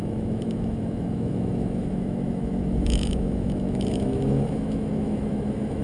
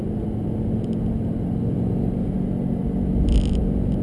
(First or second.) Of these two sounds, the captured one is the second